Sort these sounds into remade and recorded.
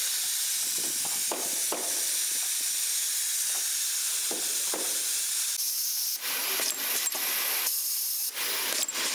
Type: recorded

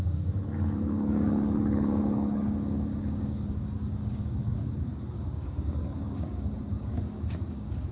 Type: remade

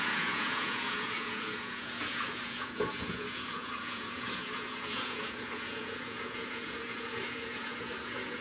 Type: remade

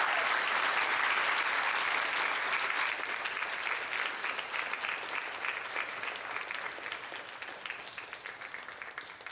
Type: recorded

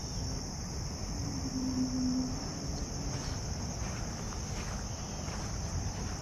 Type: recorded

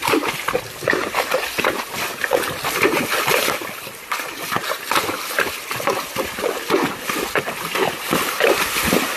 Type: recorded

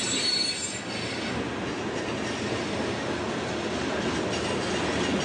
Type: recorded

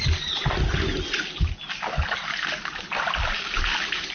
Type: recorded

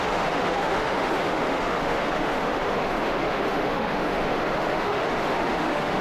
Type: remade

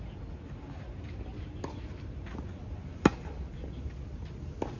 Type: recorded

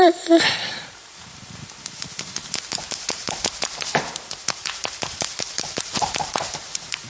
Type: remade